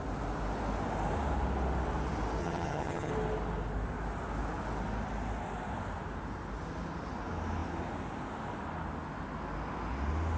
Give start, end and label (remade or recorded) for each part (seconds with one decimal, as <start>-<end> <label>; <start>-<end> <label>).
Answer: 0.0-2.4 recorded; 2.4-3.1 remade; 3.1-10.4 recorded